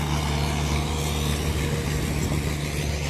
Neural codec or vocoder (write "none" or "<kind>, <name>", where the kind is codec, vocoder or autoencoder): none